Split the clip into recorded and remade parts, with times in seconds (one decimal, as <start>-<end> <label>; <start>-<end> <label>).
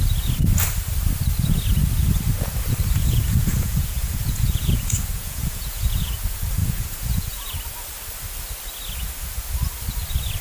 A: 0.0-3.0 recorded; 3.0-6.1 remade; 6.1-6.6 recorded; 6.6-7.5 remade; 7.5-10.4 recorded